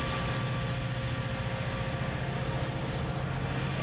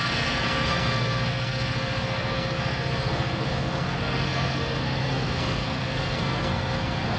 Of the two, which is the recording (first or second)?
first